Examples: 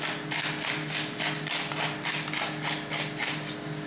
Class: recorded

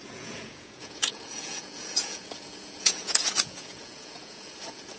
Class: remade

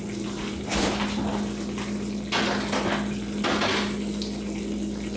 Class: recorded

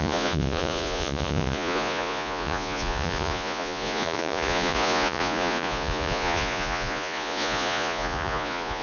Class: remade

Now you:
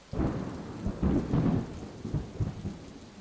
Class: recorded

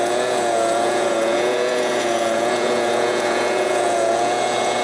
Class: remade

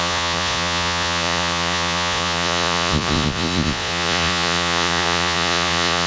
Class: remade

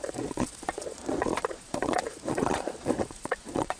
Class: remade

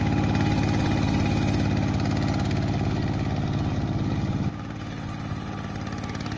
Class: recorded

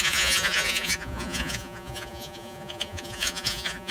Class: remade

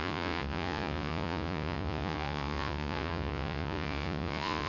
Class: remade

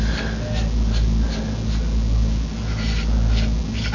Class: recorded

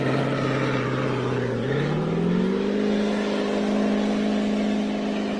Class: recorded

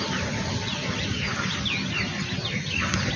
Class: recorded